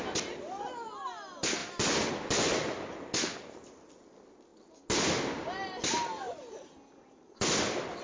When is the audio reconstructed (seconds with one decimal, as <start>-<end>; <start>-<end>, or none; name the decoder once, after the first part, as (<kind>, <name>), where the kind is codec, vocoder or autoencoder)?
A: none

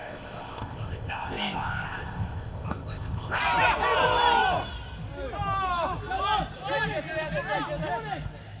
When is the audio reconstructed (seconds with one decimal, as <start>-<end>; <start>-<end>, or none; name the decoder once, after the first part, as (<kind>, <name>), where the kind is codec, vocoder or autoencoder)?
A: 0.0-3.4 (codec, ZipCodec)

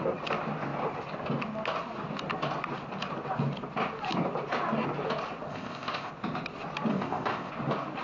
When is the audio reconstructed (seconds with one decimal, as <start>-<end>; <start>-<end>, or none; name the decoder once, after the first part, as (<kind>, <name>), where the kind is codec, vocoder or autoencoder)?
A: 5.5-6.1 (codec, ZipCodec); 6.9-7.5

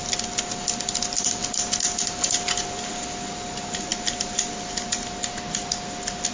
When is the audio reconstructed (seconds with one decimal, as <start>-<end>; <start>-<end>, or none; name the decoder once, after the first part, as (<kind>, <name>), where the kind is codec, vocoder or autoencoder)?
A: none

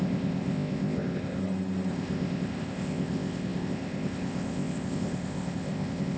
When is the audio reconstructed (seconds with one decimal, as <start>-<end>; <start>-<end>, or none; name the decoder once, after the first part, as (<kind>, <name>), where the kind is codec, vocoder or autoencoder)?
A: 0.0-1.4 (codec, ZipCodec); 1.9-6.2

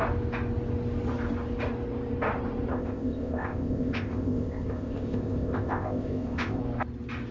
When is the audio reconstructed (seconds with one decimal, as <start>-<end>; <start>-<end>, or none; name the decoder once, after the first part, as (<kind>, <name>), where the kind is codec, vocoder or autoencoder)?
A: 2.7-6.6 (codec, ZipCodec)

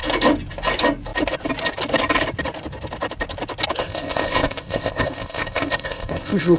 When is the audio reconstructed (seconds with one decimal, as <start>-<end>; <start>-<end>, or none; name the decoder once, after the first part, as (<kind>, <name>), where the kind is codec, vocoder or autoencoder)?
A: 3.8-6.6 (codec, ZipCodec)